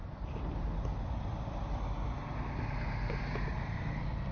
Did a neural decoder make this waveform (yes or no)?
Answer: no